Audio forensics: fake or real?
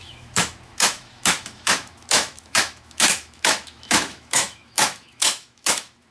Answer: fake